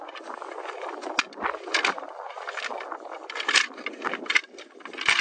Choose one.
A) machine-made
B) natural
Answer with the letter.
B